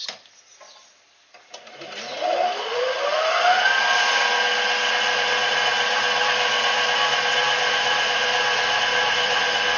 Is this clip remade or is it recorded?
recorded